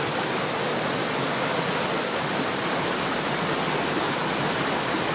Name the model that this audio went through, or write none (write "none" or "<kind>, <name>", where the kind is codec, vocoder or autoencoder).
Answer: none